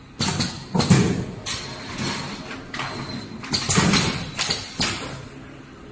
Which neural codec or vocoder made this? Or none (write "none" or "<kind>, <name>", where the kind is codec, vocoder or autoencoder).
none